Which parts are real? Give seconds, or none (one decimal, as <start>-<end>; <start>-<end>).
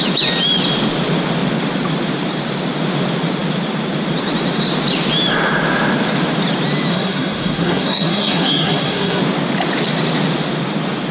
0.0-6.9; 9.2-11.1